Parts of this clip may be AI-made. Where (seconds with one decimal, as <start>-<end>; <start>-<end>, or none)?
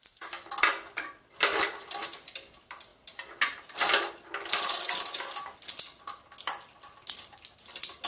none